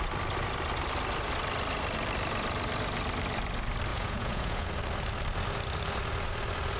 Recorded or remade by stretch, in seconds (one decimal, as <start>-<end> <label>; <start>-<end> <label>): 0.0-3.9 recorded; 3.9-4.7 remade; 4.7-6.8 recorded